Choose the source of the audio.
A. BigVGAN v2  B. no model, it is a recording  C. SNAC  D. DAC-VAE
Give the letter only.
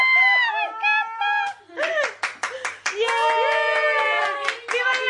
B